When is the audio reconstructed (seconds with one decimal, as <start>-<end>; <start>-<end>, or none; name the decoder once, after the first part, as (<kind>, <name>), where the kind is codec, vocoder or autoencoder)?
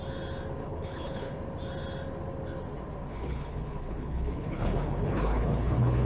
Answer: 0.6-1.4 (codec, HILCodec); 3.1-6.1